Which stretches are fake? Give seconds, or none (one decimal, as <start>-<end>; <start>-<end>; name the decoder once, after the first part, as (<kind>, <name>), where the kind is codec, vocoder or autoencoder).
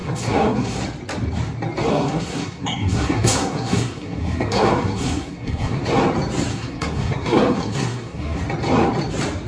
0.0-0.8 (codec, SNAC); 1.9-5.8; 6.5-8.4